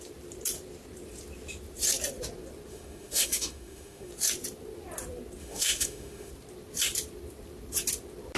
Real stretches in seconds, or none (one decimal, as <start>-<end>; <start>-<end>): 0.0-2.7; 4.1-5.4; 6.3-8.4